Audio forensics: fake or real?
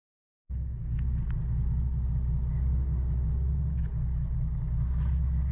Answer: real